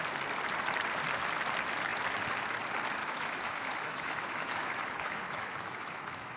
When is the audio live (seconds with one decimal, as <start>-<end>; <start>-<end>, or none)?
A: 0.0-3.0